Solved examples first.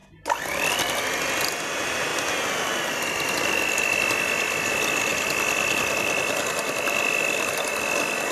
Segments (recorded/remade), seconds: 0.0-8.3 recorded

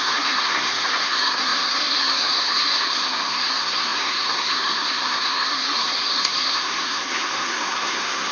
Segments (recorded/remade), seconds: 0.0-8.3 remade